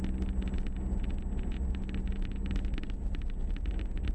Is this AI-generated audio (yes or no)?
no